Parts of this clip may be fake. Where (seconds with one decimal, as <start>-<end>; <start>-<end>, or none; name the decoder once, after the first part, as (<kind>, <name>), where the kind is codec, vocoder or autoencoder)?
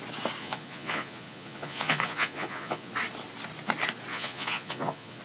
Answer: 0.4-2.9 (vocoder, Vocos); 4.1-5.2